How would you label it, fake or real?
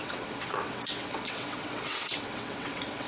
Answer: fake